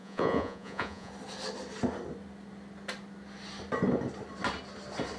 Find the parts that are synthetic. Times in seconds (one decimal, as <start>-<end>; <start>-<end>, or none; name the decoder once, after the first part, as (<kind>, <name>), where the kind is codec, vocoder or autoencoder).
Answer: 0.0-1.1 (vocoder, Vocos)